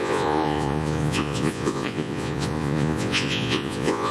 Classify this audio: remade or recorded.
remade